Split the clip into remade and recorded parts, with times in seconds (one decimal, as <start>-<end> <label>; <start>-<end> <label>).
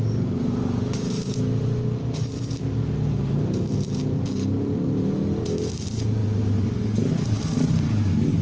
0.0-8.4 recorded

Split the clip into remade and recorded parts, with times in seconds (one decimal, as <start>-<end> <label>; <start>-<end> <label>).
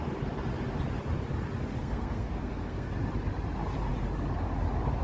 0.0-1.8 recorded; 1.8-2.9 remade; 2.9-5.0 recorded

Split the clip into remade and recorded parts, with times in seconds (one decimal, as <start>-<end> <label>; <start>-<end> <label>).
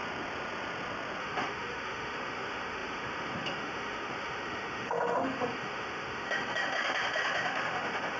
0.0-1.2 recorded; 1.2-8.2 remade